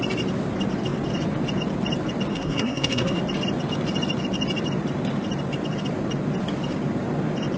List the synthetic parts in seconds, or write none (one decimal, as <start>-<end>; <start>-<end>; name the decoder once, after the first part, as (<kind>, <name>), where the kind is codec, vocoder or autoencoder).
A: 2.3-3.2 (codec, SNAC)